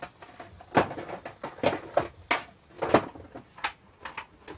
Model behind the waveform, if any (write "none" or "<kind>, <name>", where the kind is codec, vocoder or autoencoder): none